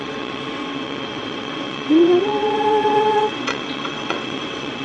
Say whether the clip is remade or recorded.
remade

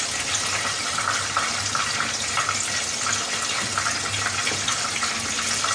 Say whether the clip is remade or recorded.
recorded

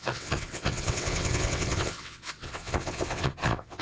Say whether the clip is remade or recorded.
remade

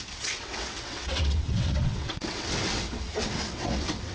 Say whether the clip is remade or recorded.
remade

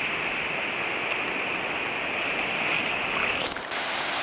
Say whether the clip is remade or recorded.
recorded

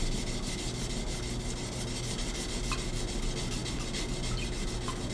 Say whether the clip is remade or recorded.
recorded